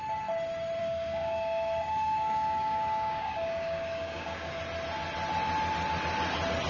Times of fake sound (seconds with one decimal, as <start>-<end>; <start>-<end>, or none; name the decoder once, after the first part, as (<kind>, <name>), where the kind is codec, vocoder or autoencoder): 0.8-4.6 (codec, DAC)